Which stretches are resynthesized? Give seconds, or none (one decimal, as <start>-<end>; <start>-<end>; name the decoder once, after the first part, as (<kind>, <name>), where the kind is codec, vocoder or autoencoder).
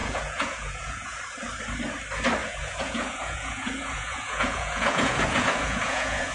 0.0-1.2 (vocoder, Vocos); 2.4-6.3